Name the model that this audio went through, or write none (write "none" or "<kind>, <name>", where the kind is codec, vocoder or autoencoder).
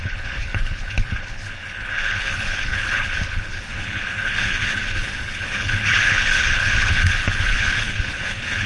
codec, HILCodec